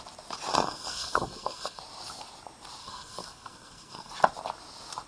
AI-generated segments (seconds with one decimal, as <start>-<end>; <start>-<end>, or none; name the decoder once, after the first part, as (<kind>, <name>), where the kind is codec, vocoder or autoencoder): 0.5-1.8 (codec, SNAC); 2.8-4.1